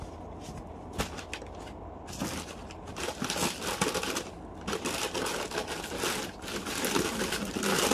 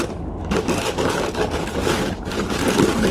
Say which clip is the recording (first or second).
first